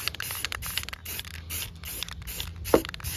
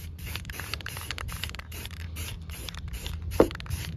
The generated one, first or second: second